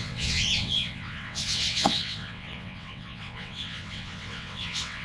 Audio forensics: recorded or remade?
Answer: remade